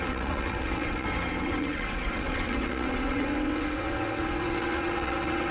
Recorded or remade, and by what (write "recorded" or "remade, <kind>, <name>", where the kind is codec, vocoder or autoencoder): remade, vocoder, WaveNeXt